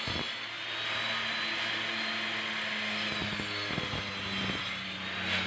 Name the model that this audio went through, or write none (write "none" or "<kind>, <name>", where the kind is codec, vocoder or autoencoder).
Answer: none